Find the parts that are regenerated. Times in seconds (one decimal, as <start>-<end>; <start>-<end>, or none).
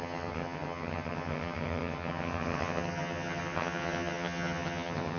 0.0-5.2